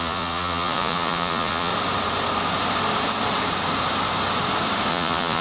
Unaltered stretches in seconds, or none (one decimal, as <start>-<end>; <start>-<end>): 1.7-4.9